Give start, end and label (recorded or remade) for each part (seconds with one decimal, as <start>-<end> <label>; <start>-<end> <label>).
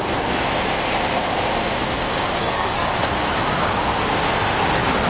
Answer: 0.0-2.4 recorded; 2.4-2.9 remade; 2.9-5.1 recorded